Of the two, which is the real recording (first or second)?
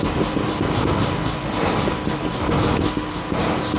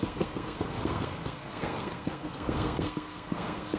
first